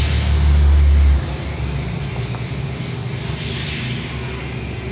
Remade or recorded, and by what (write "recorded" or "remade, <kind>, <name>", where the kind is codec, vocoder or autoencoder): recorded